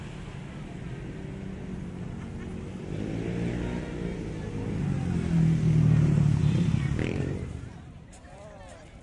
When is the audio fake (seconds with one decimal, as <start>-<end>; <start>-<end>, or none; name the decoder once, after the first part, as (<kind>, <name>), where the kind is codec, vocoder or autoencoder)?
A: 6.4-8.3 (vocoder, BigVGAN v2)

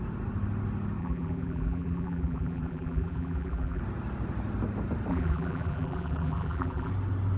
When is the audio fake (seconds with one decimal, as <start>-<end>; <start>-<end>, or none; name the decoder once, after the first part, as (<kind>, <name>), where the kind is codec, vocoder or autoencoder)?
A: 1.0-3.8 (vocoder, BigVGAN v2); 5.1-6.9

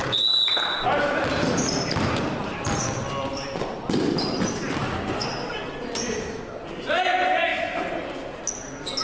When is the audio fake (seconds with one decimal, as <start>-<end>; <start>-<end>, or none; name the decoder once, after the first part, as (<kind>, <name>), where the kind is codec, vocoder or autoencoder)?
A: none

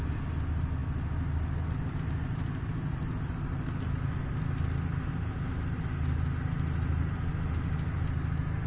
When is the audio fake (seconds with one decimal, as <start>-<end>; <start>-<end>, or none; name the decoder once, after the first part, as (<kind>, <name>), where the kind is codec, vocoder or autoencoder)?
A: none

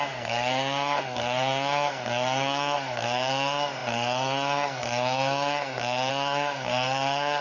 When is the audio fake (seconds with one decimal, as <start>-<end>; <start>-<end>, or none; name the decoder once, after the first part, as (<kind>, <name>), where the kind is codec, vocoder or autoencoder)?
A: 0.0-7.4 (codec, SNAC)

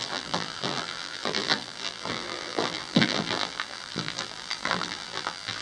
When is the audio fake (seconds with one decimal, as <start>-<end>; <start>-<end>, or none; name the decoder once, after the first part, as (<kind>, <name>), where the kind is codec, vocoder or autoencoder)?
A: 0.0-5.6 (vocoder, BigVGAN v2)

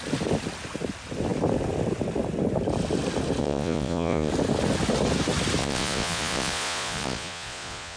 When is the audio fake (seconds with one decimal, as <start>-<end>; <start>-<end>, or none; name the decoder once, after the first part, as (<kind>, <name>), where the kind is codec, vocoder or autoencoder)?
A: 3.4-4.3 (vocoder, Vocos); 5.6-8.0